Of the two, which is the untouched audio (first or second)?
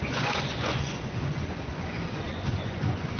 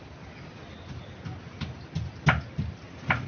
second